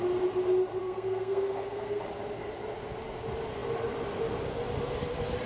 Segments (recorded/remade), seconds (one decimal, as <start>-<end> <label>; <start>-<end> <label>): 0.0-0.8 recorded; 0.8-2.0 remade; 2.0-5.5 recorded